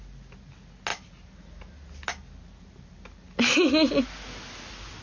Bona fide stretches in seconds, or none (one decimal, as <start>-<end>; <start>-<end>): 0.0-5.0